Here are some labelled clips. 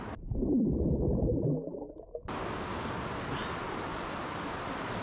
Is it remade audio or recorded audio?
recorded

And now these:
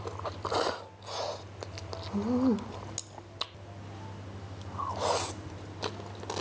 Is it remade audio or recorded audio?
recorded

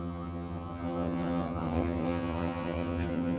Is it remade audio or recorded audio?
remade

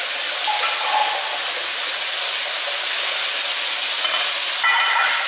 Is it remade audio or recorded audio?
recorded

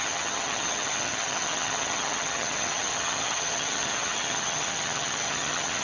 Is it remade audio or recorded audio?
remade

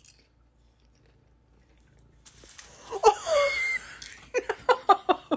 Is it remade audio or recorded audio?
recorded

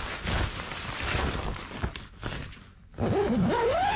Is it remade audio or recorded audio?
recorded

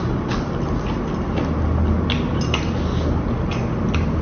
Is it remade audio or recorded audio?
recorded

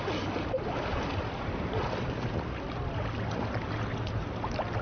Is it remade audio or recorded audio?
recorded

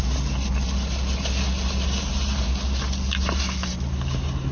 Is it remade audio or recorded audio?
recorded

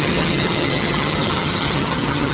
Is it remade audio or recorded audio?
remade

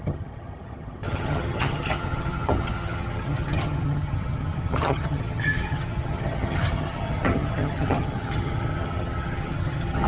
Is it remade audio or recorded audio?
remade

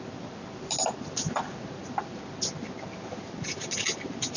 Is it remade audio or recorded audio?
recorded